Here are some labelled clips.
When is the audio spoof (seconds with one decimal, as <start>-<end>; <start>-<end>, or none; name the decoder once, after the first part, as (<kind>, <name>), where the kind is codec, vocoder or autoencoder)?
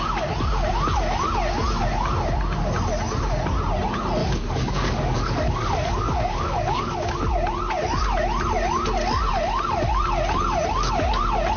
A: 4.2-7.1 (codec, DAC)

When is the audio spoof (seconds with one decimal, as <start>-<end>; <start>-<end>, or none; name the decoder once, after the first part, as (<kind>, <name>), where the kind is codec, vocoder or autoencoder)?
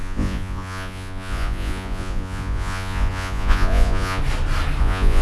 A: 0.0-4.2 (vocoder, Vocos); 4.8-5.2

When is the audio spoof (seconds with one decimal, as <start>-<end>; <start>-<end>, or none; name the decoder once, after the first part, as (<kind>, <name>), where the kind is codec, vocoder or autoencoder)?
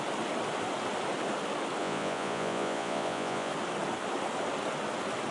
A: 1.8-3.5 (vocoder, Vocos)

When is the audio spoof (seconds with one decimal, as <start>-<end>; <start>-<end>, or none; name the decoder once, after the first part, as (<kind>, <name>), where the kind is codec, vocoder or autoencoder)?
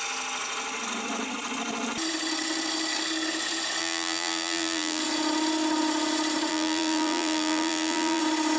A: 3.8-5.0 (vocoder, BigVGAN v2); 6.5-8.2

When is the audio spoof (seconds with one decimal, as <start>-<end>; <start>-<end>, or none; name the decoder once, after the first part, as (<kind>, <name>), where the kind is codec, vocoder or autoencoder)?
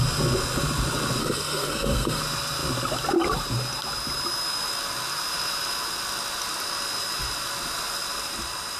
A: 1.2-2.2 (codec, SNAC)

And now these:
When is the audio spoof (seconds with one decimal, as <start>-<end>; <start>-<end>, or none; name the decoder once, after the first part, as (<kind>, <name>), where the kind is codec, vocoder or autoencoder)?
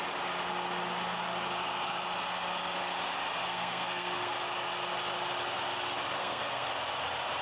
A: 3.4-4.3 (codec, SNAC); 6.2-6.7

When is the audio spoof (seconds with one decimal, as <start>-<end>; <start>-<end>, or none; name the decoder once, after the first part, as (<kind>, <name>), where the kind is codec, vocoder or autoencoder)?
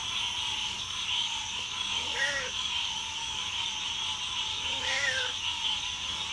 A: 0.6-3.7 (codec, DAC); 4.5-6.3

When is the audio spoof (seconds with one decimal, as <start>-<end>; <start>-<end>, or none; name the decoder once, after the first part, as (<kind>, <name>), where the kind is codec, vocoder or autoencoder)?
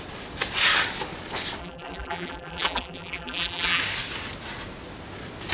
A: 1.6-3.8 (vocoder, BigVGAN v2)